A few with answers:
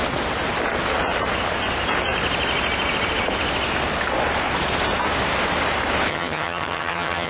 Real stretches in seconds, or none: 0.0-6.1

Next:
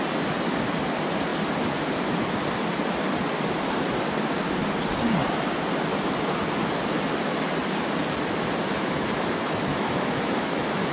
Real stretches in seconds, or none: 0.0-9.7

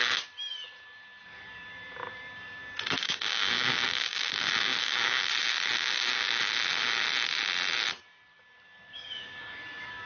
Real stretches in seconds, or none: 0.0-3.0; 5.2-5.7; 6.5-8.9; 9.6-10.1

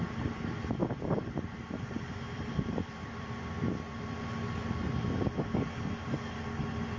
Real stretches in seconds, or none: 0.0-0.8; 4.2-7.0

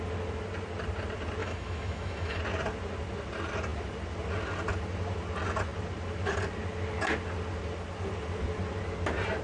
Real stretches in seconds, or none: 0.0-1.4; 2.4-9.4